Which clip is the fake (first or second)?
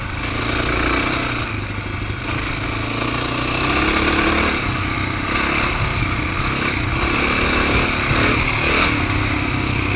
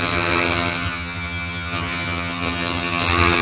second